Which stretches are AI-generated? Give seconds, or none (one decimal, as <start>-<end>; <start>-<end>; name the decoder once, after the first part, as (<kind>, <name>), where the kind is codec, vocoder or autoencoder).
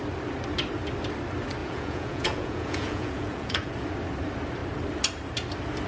1.6-3.7 (vocoder, Vocos)